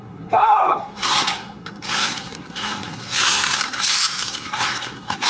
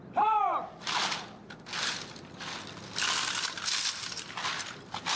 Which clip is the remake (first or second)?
first